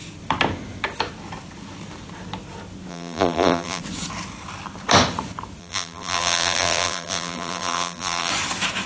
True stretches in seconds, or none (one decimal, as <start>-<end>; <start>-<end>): 0.0-2.9; 3.8-5.6; 8.3-8.9